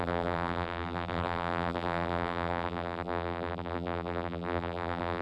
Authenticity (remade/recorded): remade